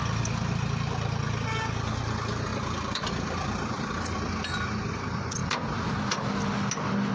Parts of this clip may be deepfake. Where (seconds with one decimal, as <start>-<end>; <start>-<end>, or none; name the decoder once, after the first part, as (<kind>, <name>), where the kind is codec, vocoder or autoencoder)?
2.5-5.0 (vocoder, BigVGAN v2); 5.4-5.9